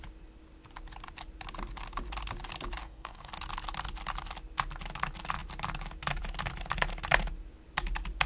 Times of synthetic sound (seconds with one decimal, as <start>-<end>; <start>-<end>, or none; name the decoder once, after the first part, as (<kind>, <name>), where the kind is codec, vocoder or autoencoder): 2.8-3.3 (codec, DAC)